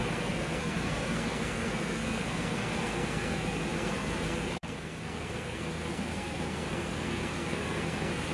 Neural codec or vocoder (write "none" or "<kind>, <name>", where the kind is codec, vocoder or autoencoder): codec, SNAC